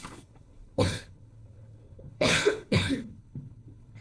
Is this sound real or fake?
fake